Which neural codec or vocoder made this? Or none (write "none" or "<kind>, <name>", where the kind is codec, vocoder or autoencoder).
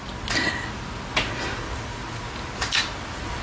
none